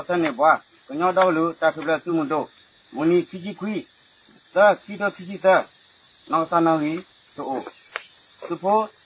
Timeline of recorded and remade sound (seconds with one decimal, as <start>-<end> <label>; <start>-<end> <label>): 0.0-2.1 recorded; 2.1-3.0 remade; 3.0-6.2 recorded; 6.2-7.2 remade; 7.2-9.0 recorded